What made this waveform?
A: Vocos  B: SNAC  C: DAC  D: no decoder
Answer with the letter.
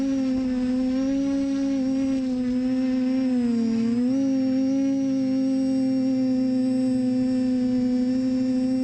D